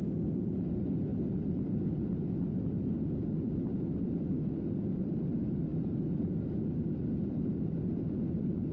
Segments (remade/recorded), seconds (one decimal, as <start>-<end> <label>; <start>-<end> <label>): 0.0-8.7 recorded